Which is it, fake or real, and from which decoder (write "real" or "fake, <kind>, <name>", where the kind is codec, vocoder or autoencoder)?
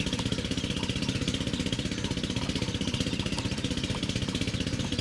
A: real